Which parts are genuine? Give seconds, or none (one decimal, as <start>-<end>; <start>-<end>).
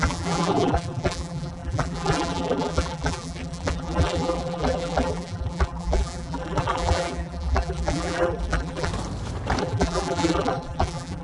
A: 8.9-9.6